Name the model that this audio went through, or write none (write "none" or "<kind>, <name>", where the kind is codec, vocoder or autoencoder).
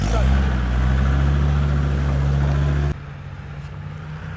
none